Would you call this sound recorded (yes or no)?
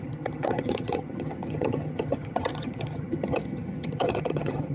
no